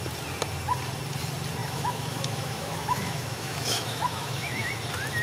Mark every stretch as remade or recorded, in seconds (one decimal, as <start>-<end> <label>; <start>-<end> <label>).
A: 0.0-1.6 recorded; 1.6-4.7 remade; 4.7-5.2 recorded